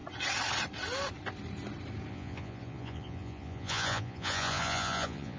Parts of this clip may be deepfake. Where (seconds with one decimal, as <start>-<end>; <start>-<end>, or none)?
2.1-5.4